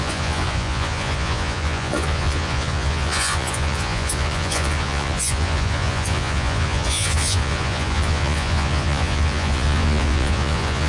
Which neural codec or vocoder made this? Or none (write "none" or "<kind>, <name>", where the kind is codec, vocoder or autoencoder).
vocoder, Vocos